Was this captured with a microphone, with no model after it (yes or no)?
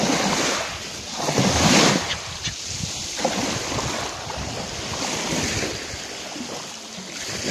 yes